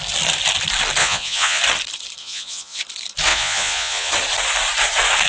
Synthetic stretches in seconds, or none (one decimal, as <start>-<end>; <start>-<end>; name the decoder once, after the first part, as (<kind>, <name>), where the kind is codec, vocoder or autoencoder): 1.0-1.6 (vocoder, Vocos); 2.2-2.8; 3.3-4.1